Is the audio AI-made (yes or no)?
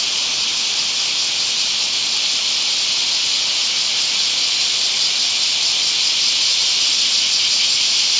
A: no